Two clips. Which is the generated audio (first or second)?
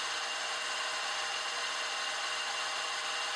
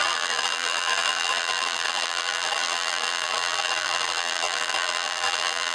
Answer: second